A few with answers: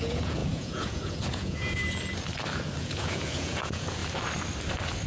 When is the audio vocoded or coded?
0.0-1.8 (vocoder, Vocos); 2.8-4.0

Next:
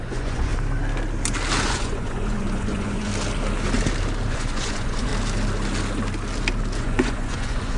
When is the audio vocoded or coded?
0.0-0.5 (vocoder, Vocos); 1.6-3.1; 4.3-5.1; 6.8-7.8

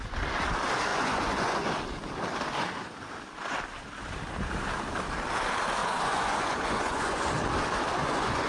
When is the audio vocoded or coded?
0.9-1.7 (vocoder, Vocos); 5.8-7.3; 8.0-8.5